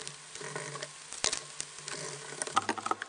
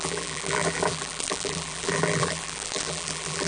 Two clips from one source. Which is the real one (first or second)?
first